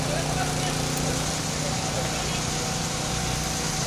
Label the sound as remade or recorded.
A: recorded